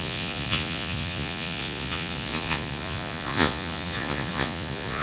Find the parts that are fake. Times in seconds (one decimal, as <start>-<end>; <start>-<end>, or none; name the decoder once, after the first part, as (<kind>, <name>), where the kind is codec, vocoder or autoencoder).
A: 0.0-5.0 (vocoder, Vocos)